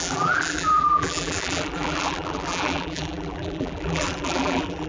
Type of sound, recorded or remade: remade